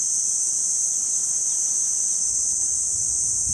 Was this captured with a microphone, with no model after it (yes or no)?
yes